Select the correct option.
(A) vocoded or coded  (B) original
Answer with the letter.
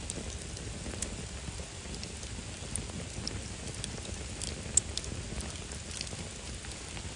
B